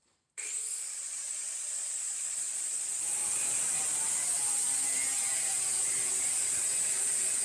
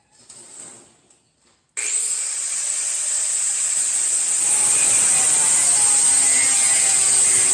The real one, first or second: second